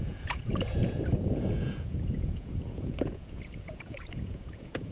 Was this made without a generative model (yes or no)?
no